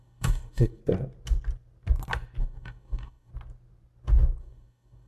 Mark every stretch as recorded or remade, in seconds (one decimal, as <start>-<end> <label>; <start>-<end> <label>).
0.0-0.8 remade; 0.8-2.4 recorded; 2.4-3.3 remade; 3.3-4.4 recorded; 4.4-5.1 remade